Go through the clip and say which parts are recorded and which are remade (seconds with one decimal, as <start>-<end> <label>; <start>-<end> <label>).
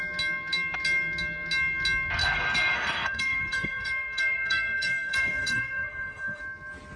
0.0-2.2 recorded; 2.2-6.4 remade; 6.4-7.0 recorded